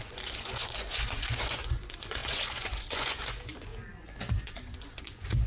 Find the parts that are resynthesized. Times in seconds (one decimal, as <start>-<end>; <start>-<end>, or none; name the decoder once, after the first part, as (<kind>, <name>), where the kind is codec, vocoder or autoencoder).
0.0-5.5 (vocoder, Vocos)

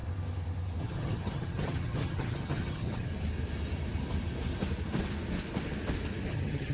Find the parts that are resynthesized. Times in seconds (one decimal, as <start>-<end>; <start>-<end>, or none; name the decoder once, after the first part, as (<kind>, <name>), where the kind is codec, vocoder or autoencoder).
0.8-3.1 (vocoder, HiFi-GAN); 6.3-6.7

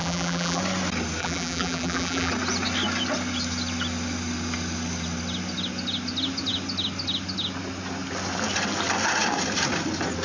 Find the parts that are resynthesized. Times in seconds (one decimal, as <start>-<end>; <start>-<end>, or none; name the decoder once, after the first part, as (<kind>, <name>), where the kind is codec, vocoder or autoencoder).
0.0-0.6 (vocoder, BigVGAN v2); 1.2-2.3

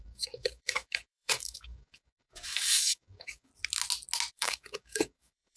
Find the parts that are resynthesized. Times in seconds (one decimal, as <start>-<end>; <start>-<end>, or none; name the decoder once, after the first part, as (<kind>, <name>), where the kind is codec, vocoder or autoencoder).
0.0-3.5 (codec, DAC); 4.3-5.6

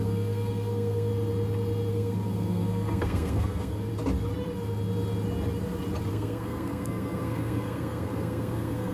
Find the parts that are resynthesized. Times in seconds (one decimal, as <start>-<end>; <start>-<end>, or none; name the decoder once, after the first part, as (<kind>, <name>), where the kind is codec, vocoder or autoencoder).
0.0-1.1 (codec, SNAC); 1.9-3.9; 6.1-8.9

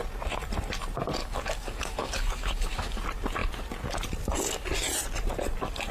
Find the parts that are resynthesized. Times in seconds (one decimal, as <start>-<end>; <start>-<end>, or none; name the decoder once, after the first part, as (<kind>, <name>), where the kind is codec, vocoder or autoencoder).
1.2-3.0 (codec, DAC)